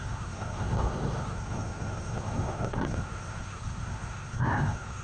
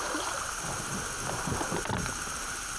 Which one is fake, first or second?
first